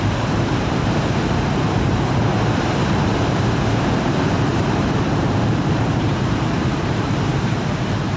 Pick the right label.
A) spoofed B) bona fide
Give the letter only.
A